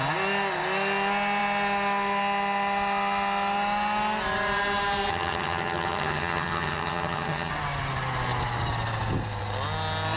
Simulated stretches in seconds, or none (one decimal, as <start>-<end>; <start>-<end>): 5.1-7.5